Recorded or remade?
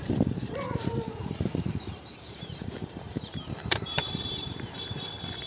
remade